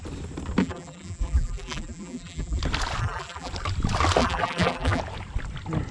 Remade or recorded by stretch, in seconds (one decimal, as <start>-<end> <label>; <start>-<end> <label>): 0.0-0.6 recorded; 0.6-2.6 remade; 2.6-3.0 recorded; 3.0-3.5 remade; 3.5-4.2 recorded; 4.2-5.0 remade; 5.0-5.9 recorded